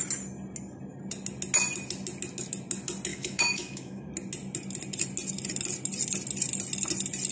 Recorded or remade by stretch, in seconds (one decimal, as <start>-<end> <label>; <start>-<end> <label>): 0.0-3.1 recorded; 3.1-4.1 remade; 4.1-7.3 recorded